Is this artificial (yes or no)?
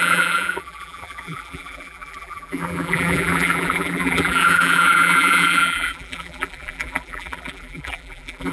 yes